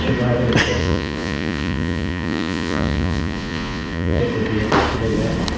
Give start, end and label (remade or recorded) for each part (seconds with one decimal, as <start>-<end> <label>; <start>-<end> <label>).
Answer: 0.0-0.8 recorded; 0.8-4.2 remade; 4.2-5.6 recorded